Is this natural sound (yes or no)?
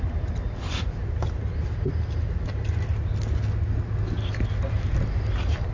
yes